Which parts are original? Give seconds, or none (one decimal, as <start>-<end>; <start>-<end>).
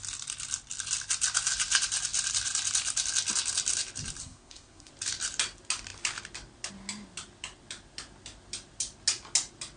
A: 0.0-4.2; 4.9-9.8